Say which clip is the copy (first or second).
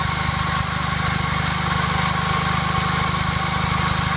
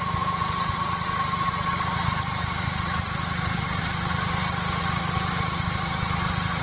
second